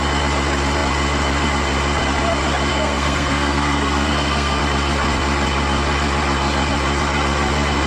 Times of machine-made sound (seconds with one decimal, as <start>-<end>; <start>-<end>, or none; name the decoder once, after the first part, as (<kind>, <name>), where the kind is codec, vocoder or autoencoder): 2.7-4.6 (codec, SNAC)

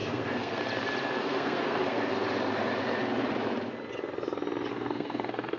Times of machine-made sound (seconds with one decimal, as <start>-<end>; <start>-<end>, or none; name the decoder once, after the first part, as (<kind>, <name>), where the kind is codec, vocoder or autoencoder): 0.0-0.6 (codec, SNAC); 1.2-2.1; 4.7-5.6

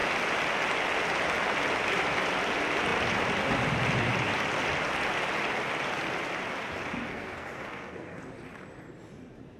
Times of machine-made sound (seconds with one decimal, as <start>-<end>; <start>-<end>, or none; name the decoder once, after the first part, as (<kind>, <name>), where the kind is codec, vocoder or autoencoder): 7.1-8.2 (codec, SNAC)

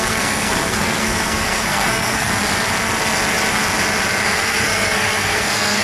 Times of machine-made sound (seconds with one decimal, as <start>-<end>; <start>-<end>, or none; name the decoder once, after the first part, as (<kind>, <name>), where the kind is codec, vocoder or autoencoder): 0.0-2.3 (codec, SNAC); 4.2-5.8

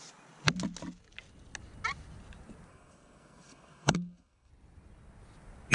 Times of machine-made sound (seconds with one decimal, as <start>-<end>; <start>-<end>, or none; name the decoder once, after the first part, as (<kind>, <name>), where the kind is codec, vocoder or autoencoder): 2.7-4.5 (codec, SNAC)

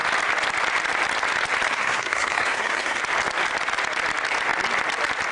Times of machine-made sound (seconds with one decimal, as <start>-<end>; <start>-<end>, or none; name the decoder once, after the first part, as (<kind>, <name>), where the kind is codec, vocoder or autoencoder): 1.7-3.0 (codec, SNAC)

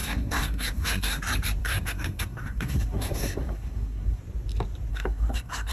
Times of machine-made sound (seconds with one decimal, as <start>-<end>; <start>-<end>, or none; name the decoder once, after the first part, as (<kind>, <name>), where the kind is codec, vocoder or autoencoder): 0.0-1.2 (codec, SNAC); 1.6-4.2; 4.9-5.7

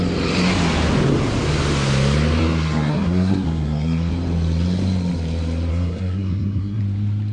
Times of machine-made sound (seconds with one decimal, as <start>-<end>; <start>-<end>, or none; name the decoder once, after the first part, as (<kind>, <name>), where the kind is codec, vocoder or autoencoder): 2.4-4.1 (codec, SNAC); 5.7-6.8